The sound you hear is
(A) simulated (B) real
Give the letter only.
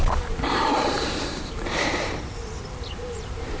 A